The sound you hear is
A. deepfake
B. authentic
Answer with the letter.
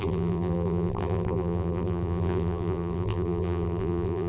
A